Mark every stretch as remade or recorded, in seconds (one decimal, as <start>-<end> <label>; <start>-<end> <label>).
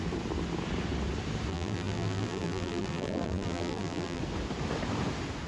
0.0-1.5 recorded; 1.5-4.2 remade; 4.2-5.5 recorded